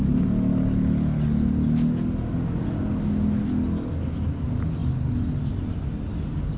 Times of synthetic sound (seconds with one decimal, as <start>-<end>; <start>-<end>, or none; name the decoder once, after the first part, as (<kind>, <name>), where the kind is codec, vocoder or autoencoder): none